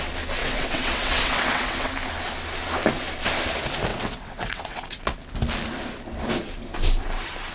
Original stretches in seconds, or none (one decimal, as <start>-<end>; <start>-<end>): 0.0-0.4; 1.9-3.9; 5.2-7.5